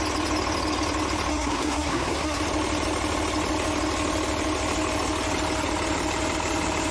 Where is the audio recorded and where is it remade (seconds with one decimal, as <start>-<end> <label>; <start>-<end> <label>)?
0.0-1.3 recorded; 1.3-2.4 remade; 2.4-6.9 recorded